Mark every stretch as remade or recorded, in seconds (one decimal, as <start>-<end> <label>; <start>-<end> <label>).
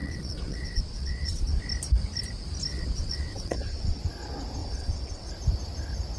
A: 0.0-1.6 remade; 1.6-2.7 recorded; 2.7-4.0 remade; 4.0-4.6 recorded; 4.6-5.3 remade; 5.3-6.2 recorded